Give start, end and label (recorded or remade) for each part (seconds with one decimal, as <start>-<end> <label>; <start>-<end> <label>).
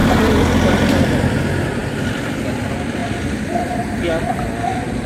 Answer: 0.0-5.1 remade